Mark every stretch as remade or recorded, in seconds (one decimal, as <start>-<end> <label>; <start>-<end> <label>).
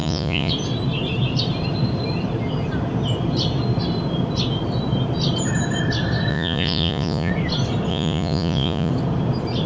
0.0-0.5 remade; 0.5-6.3 recorded; 6.3-7.3 remade; 7.3-7.9 recorded; 7.9-8.9 remade; 8.9-9.7 recorded